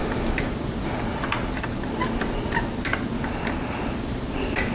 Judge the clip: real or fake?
real